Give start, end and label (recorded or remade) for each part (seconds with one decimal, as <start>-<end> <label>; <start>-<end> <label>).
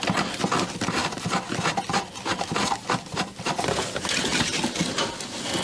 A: 0.0-5.6 recorded